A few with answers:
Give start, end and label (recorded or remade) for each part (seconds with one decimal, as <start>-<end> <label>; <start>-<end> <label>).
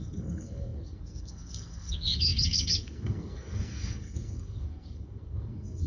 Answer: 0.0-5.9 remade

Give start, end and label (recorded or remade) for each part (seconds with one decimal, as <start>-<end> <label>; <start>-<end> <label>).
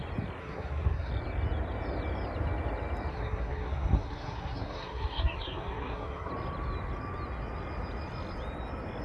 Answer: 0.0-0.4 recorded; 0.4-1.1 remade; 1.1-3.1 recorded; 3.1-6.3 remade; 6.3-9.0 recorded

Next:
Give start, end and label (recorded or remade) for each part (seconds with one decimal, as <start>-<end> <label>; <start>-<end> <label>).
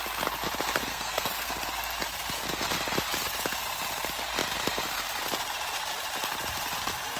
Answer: 0.0-0.9 recorded; 0.9-1.5 remade; 1.5-7.2 recorded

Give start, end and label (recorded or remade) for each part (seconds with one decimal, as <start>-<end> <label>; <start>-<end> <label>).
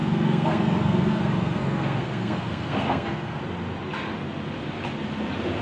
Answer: 0.0-3.4 remade; 3.4-5.6 recorded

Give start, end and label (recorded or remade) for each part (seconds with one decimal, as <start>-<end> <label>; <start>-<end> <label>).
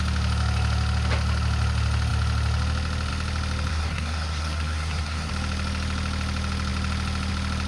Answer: 0.0-3.7 recorded; 3.7-5.3 remade; 5.3-7.7 recorded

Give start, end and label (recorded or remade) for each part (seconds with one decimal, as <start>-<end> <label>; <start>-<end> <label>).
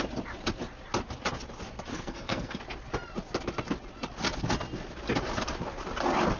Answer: 0.0-1.9 recorded; 1.9-2.6 remade; 2.6-6.4 recorded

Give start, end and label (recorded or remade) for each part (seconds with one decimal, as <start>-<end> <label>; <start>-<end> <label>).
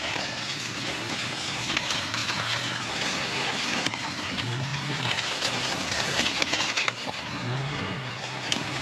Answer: 0.0-8.8 remade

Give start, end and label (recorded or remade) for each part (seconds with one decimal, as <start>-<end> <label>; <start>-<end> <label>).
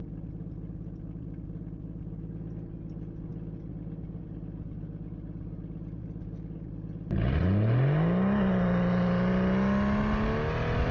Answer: 0.0-10.9 recorded